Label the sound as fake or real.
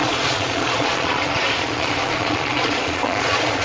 fake